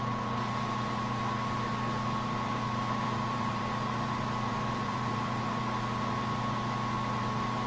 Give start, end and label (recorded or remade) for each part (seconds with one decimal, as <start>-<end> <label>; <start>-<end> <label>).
0.0-3.0 recorded; 3.0-3.6 remade; 3.6-4.5 recorded; 4.5-5.4 remade; 5.4-7.7 recorded